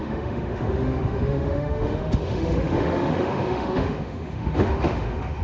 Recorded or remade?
remade